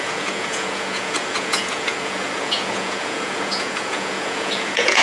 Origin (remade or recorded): remade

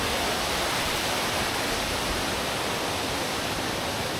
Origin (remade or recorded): recorded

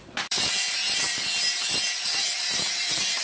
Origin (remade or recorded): remade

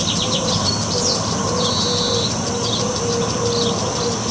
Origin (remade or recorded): recorded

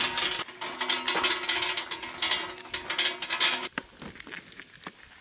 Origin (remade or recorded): recorded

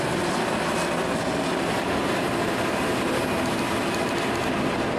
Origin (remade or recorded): recorded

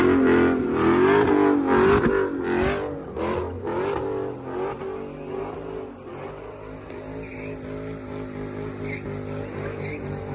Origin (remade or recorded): recorded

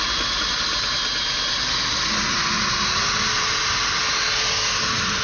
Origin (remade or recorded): recorded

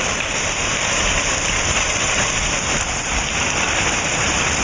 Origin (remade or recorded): recorded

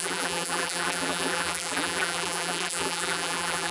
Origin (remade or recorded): remade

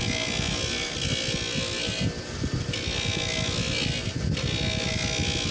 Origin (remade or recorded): recorded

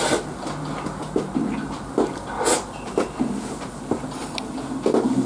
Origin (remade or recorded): recorded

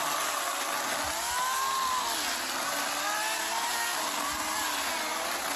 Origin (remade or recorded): recorded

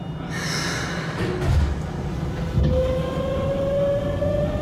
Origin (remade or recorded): recorded